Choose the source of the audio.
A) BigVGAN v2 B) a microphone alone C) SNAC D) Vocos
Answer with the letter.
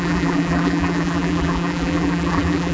A